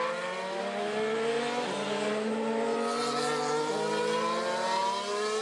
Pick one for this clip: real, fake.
real